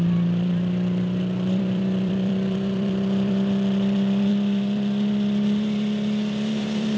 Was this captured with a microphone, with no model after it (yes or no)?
no